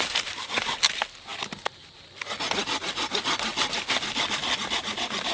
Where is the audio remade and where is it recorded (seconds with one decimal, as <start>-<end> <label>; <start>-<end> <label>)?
0.0-5.3 recorded